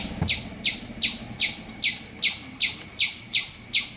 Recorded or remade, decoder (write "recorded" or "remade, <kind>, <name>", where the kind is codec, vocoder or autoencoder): recorded